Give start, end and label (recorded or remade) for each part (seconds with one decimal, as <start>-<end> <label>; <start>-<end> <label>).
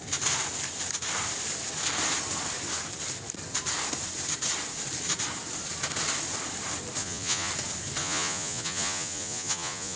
0.0-7.0 recorded; 7.0-7.5 remade; 7.5-8.0 recorded; 8.0-10.0 remade